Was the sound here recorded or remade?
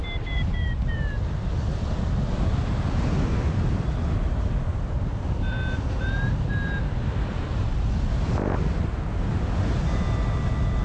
recorded